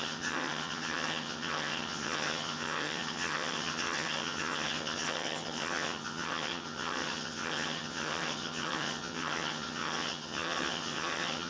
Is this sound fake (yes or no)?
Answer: yes